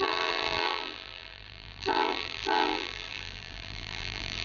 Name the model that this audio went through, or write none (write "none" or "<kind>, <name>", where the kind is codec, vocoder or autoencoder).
vocoder, BigVGAN v2